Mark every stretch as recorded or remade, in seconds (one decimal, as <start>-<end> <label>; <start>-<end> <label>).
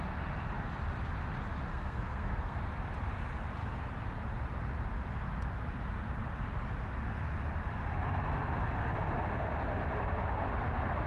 0.0-1.7 recorded; 1.7-2.6 remade; 2.6-11.1 recorded